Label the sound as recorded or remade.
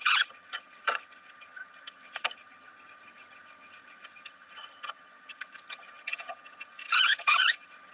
remade